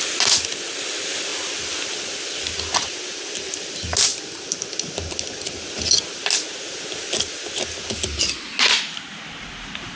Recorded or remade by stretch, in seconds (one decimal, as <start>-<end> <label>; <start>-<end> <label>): 0.0-10.0 recorded